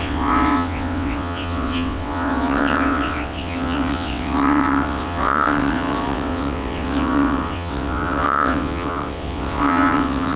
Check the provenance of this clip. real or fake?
fake